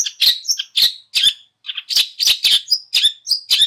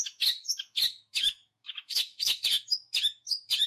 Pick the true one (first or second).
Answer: first